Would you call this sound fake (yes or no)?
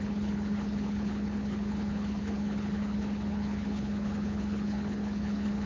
yes